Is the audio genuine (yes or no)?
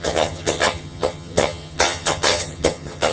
no